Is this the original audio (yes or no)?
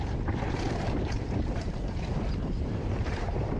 no